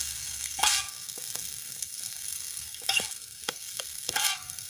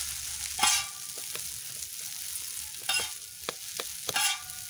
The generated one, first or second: first